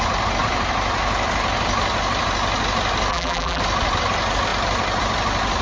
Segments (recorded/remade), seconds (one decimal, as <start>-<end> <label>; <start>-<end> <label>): 0.0-3.1 recorded; 3.1-3.6 remade; 3.6-5.6 recorded